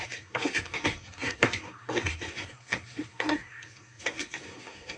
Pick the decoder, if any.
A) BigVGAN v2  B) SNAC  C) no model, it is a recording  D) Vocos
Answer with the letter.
B